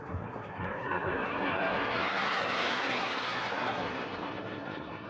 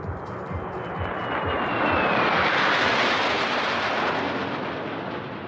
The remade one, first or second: first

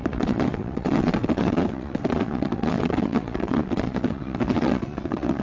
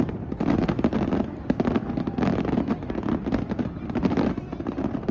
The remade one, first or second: first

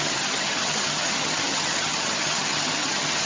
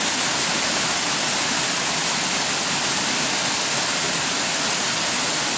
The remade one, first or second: first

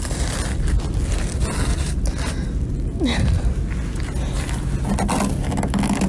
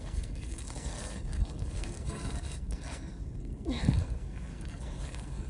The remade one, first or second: second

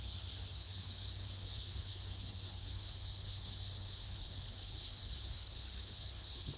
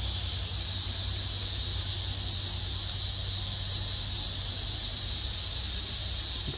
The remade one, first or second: first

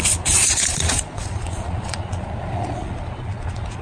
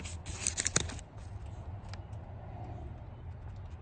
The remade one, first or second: first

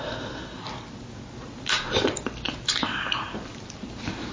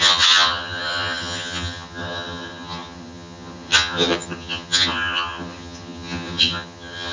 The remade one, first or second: second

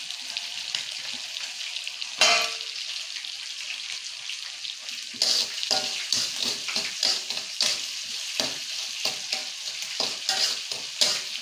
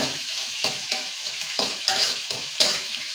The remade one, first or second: second